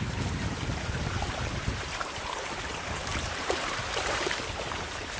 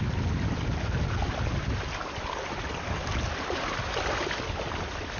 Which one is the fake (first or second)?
first